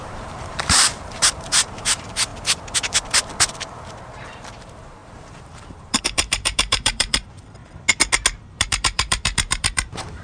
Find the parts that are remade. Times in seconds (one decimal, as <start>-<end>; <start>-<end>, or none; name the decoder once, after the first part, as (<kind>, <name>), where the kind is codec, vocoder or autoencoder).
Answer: 0.0-2.3 (vocoder, BigVGAN v2); 4.6-7.6; 8.6-10.2